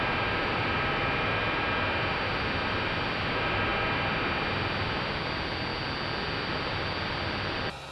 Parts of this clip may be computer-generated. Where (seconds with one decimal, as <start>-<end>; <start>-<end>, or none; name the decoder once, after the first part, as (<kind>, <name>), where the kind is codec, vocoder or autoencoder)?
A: 0.0-3.7 (vocoder, BigVGAN v2); 4.6-5.7; 6.5-7.9